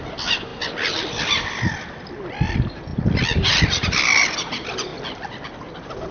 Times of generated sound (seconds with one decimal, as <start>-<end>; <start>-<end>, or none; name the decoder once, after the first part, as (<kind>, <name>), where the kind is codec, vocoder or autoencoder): 0.0-2.9 (vocoder, BigVGAN v2); 3.6-4.9